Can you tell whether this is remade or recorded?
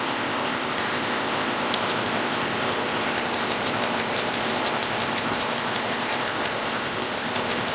remade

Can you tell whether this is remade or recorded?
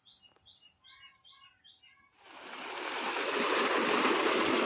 recorded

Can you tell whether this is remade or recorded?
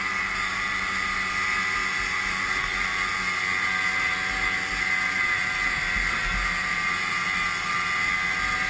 recorded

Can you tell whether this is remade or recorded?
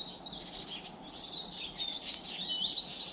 recorded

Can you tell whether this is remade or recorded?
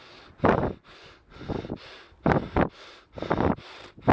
recorded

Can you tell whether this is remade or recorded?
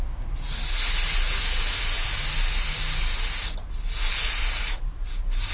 recorded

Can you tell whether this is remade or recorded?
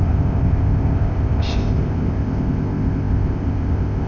remade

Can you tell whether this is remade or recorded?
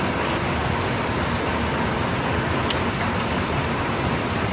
recorded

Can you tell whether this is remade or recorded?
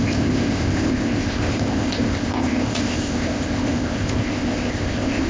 remade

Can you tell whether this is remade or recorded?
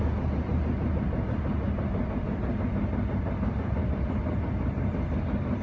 recorded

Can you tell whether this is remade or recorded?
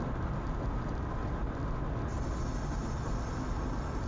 recorded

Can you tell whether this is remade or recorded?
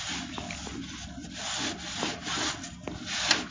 recorded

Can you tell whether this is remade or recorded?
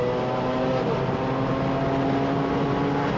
recorded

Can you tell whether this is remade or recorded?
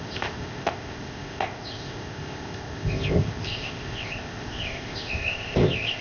remade